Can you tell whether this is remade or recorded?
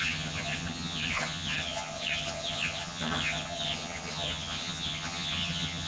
remade